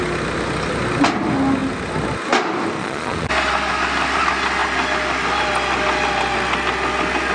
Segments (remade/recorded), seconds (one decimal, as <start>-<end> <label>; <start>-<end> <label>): 0.0-2.8 recorded; 2.8-3.3 remade; 3.3-7.3 recorded